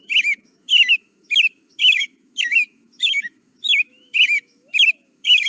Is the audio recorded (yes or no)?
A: no